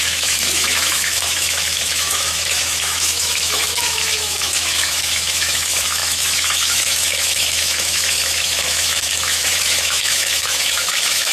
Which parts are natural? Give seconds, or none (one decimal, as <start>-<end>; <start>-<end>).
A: none